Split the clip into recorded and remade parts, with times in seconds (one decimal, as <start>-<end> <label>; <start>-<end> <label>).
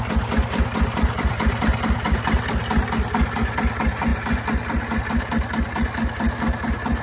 0.0-7.0 recorded